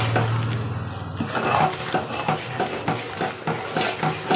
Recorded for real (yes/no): yes